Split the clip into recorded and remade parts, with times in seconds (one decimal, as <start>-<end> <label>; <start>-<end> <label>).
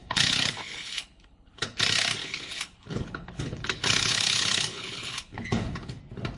0.0-1.8 remade; 1.8-2.2 recorded; 2.2-6.0 remade; 6.0-6.4 recorded